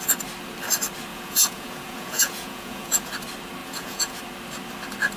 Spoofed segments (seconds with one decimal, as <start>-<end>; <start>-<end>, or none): 1.1-3.1; 3.6-4.2